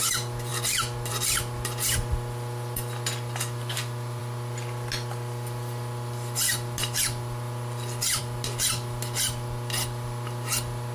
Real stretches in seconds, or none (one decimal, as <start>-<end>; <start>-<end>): 0.0-10.9